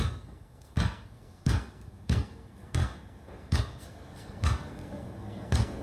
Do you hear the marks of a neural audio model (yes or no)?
yes